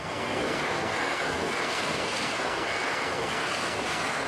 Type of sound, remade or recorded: remade